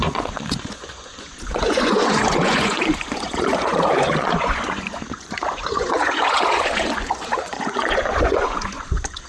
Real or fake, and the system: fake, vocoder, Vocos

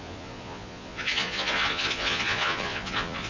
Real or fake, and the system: fake, vocoder, Vocos